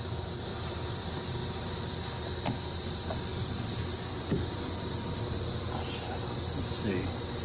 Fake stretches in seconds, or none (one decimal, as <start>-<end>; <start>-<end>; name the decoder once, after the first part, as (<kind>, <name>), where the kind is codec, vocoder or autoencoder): 0.5-2.3 (vocoder, BigVGAN v2); 3.3-5.8